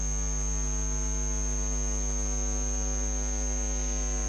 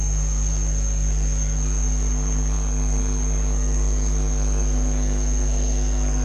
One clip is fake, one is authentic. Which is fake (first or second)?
second